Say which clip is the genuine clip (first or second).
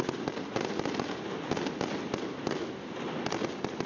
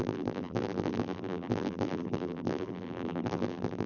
first